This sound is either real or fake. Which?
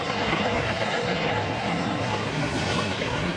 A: fake